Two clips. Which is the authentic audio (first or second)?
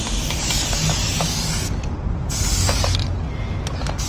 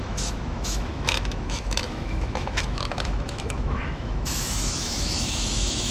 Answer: first